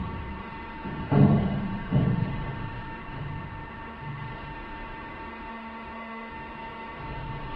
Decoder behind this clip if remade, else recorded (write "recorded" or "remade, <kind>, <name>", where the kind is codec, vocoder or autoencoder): remade, autoencoder, DAC-VAE